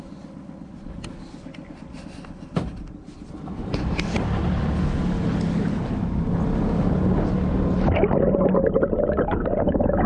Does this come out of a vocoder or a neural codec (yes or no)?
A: no